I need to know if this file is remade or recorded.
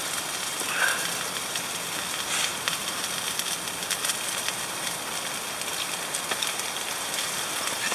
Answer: remade